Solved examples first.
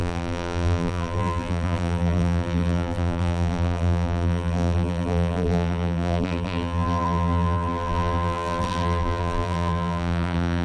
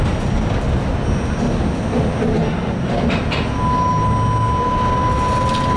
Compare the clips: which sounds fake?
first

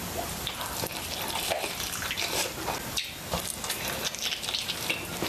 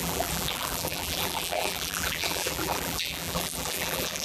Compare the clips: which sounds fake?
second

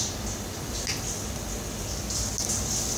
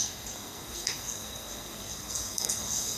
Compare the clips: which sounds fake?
second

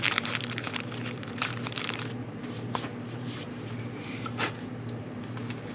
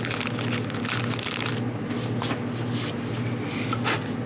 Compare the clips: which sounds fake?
first